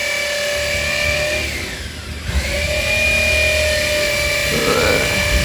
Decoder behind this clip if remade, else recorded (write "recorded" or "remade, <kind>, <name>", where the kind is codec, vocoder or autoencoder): recorded